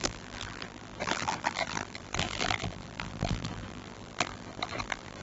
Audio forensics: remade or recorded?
remade